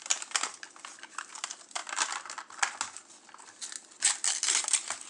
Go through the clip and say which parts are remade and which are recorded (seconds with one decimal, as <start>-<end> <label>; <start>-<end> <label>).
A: 0.0-5.1 recorded

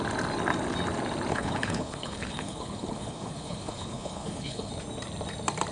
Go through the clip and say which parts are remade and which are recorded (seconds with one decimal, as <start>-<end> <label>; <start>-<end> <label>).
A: 0.0-1.3 recorded; 1.3-4.7 remade; 4.7-5.7 recorded

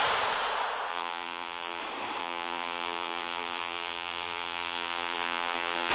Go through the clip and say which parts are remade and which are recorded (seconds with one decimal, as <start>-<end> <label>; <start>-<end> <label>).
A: 0.0-0.9 recorded; 0.9-1.8 remade; 1.8-2.2 recorded; 2.2-5.9 remade

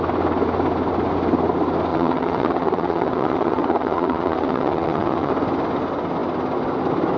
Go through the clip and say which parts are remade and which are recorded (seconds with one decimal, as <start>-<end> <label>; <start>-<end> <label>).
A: 0.0-1.9 recorded; 1.9-5.3 remade; 5.3-7.2 recorded